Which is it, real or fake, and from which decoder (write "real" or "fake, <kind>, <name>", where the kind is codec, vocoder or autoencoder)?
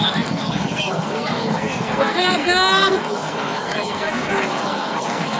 fake, codec, SNAC